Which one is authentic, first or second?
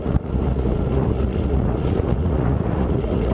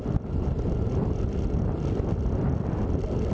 second